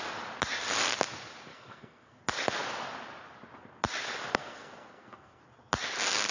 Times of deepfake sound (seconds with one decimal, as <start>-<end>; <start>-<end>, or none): 1.5-2.2; 4.3-5.4